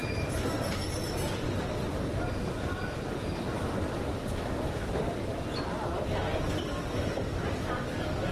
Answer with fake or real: fake